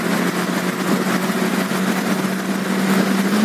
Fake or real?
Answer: real